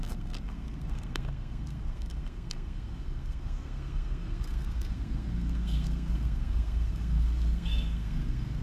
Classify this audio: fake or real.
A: fake